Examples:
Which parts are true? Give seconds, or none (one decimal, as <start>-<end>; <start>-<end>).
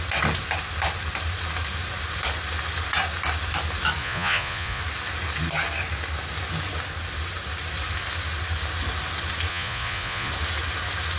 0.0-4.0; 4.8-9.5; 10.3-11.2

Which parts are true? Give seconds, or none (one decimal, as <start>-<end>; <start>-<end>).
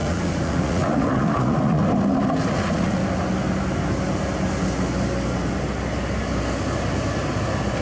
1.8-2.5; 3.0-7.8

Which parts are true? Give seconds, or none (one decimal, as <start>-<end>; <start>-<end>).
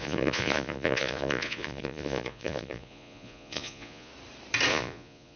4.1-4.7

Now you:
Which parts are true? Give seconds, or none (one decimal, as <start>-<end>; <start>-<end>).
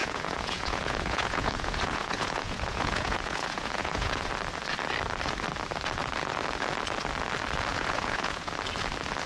4.3-7.7; 8.5-9.3